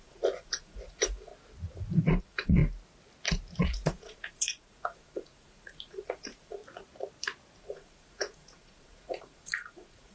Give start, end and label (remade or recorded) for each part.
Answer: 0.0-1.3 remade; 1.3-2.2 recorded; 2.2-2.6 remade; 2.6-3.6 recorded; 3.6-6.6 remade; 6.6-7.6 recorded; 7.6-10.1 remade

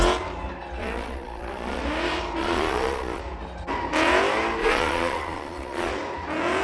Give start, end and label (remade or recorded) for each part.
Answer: 0.0-0.8 recorded; 0.8-1.8 remade; 1.8-2.4 recorded; 2.4-3.2 remade; 3.2-4.6 recorded; 4.6-5.9 remade; 5.9-6.6 recorded

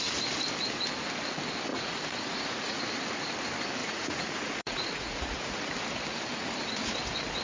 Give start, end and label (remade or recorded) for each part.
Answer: 0.0-1.7 recorded; 1.7-2.8 remade; 2.8-3.8 recorded; 3.8-5.6 remade; 5.6-7.4 recorded

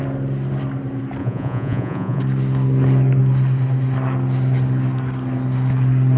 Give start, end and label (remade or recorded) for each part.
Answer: 0.0-1.2 recorded; 1.2-2.2 remade; 2.2-6.2 recorded